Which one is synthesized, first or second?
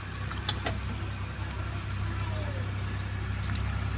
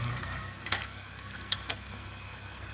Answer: second